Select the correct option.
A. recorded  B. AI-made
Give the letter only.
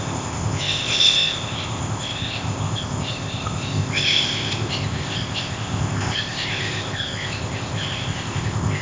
B